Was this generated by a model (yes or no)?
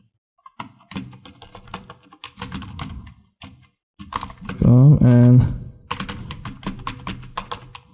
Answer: no